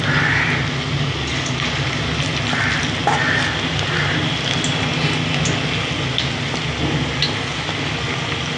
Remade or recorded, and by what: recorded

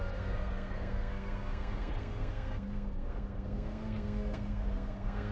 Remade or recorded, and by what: remade, codec, SNAC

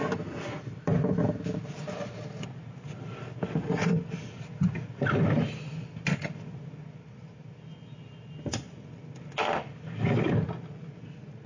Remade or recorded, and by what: recorded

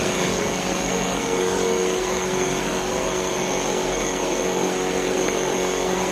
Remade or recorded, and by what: remade, codec, SNAC